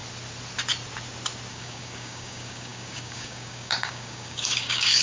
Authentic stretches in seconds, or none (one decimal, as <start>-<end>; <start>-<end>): 0.0-1.5